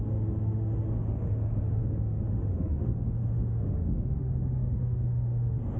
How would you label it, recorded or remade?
remade